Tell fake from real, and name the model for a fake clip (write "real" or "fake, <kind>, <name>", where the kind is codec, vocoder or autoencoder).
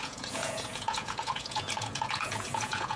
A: fake, vocoder, Vocos